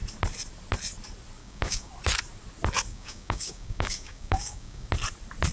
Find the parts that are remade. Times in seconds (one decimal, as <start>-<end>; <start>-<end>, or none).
1.4-1.9; 2.9-4.9